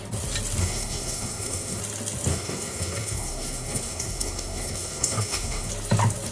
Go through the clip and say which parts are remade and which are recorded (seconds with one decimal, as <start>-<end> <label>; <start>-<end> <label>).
0.0-0.6 recorded; 0.6-1.8 remade; 1.8-2.3 recorded; 2.3-5.7 remade; 5.7-6.3 recorded